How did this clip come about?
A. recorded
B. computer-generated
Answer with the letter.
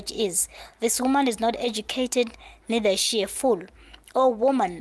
A